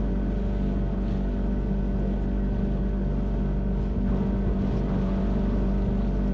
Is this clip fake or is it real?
real